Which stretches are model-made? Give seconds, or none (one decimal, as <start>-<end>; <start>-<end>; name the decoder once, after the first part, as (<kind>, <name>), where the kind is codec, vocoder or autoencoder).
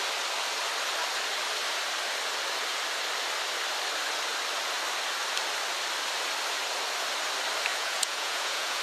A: 7.7-8.8 (vocoder, Vocos)